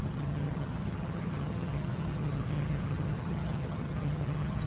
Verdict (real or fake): fake